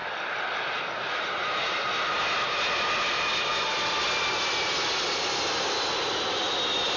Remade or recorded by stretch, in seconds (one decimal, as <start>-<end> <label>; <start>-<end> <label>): 0.0-7.0 recorded

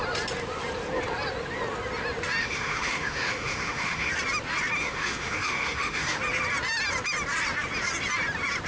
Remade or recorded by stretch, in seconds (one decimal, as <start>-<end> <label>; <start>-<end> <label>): 0.0-2.4 recorded; 2.4-4.1 remade; 4.1-4.8 recorded; 4.8-6.2 remade; 6.2-8.7 recorded

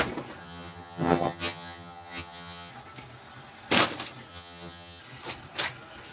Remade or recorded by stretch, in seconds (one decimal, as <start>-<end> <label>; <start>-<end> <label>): 0.0-0.4 recorded; 0.4-2.7 remade; 2.7-4.3 recorded; 4.3-5.0 remade; 5.0-6.1 recorded